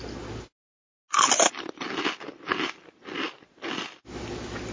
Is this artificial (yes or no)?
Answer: no